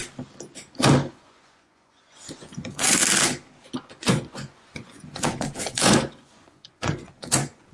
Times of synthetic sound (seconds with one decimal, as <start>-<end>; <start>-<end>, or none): 1.1-3.0; 4.0-7.7